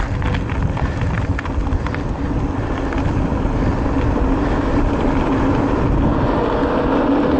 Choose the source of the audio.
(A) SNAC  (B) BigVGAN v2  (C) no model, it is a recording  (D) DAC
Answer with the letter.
C